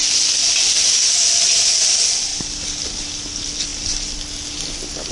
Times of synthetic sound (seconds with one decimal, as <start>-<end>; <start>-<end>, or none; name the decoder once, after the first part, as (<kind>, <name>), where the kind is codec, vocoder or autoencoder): none